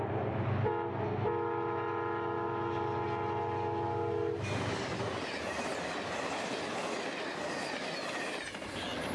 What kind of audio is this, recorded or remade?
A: recorded